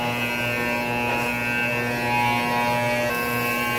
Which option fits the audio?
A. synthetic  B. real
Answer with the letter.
B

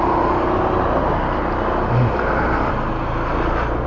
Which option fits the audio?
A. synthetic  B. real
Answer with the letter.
B